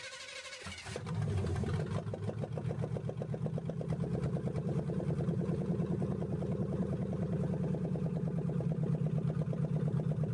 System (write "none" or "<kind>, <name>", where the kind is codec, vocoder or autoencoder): none